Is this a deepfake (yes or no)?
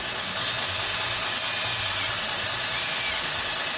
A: no